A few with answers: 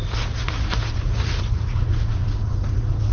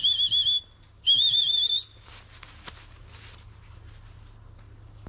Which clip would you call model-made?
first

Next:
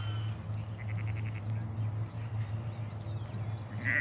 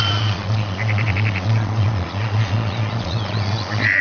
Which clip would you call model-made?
second